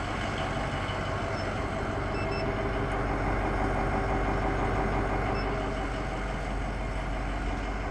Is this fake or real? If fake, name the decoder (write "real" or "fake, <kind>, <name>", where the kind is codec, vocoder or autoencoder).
real